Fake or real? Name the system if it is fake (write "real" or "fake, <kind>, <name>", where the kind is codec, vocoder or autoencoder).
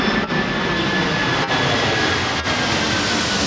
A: real